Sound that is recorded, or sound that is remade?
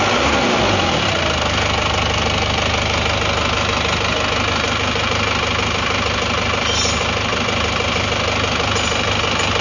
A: recorded